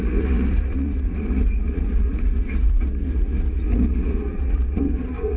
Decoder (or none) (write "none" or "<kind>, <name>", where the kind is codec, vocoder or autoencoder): vocoder, Vocos